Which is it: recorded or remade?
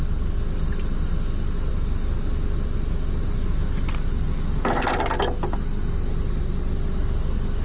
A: recorded